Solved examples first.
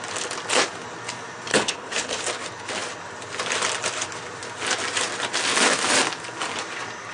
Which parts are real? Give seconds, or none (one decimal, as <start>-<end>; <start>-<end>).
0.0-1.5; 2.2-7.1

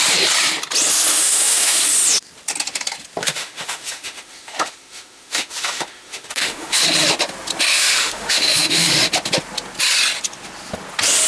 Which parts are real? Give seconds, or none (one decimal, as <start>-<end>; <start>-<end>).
0.0-1.1; 1.8-3.2; 6.8-7.7; 8.9-11.3

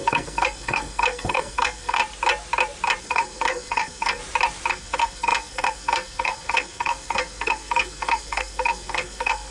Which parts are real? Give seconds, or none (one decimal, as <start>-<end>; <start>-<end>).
2.0-3.0; 4.2-4.7

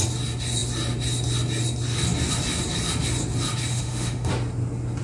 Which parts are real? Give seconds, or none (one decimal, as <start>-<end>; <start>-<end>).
0.0-3.7; 4.3-5.0

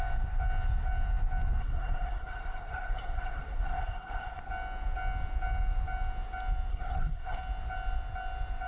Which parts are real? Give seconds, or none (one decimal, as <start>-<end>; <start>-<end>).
0.0-1.6; 4.5-6.7; 7.4-8.7

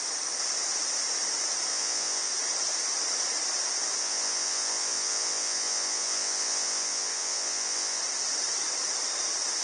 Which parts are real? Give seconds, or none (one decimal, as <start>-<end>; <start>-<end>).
0.0-1.7; 2.3-4.0; 8.0-9.6